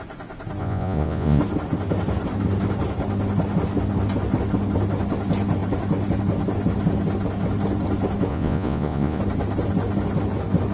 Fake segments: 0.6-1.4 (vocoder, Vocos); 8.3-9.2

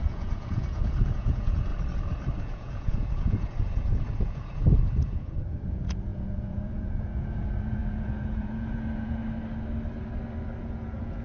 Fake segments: 0.0-1.7 (vocoder, Vocos); 2.4-9.2; 10.6-11.2

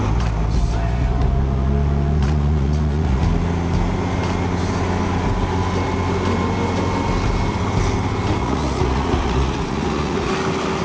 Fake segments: 2.2-3.2 (vocoder, Vocos); 8.4-10.3

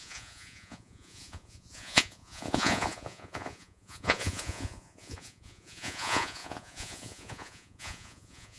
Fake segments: 0.0-8.6 (vocoder, Vocos)

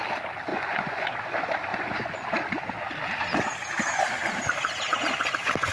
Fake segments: 0.5-1.1 (vocoder, Vocos); 1.7-2.6

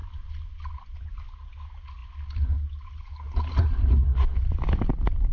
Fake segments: none

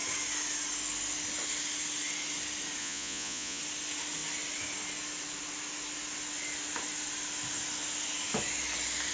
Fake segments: 2.8-3.6 (vocoder, Vocos)

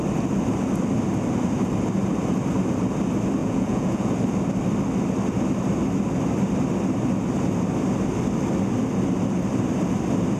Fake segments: 3.4-4.1 (vocoder, Vocos)